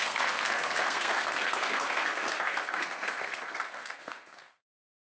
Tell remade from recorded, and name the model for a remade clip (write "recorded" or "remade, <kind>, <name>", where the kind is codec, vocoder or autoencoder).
remade, codec, SNAC